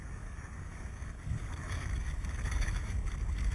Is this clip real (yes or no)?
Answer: no